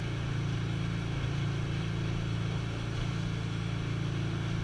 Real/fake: real